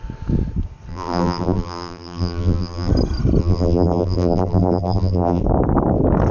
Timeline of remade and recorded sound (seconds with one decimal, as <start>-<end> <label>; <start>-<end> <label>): 0.0-0.9 recorded; 0.9-2.9 remade; 2.9-3.4 recorded; 3.4-5.4 remade; 5.4-6.3 recorded